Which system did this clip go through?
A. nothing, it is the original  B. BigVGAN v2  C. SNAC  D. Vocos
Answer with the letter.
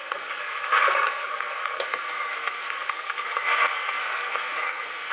C